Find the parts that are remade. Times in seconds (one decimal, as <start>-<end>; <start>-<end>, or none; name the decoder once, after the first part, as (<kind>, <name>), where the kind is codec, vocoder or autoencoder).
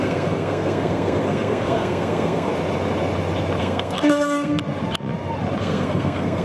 0.0-2.5 (codec, SNAC); 3.6-4.6; 5.6-6.4